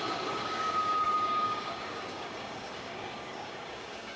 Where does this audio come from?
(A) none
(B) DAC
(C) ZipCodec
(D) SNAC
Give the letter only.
B